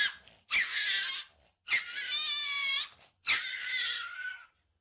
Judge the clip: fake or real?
real